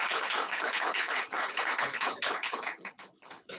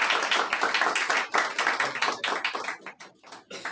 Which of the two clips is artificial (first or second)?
first